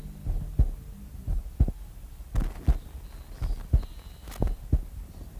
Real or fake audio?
real